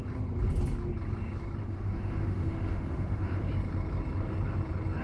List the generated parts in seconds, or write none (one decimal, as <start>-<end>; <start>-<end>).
1.6-3.5